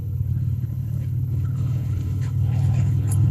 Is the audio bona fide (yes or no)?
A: no